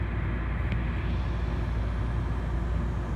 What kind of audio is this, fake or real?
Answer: real